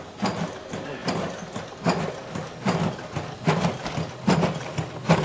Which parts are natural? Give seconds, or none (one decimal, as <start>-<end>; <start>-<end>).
0.0-5.2